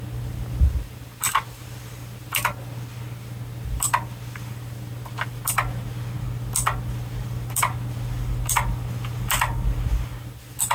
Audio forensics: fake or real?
real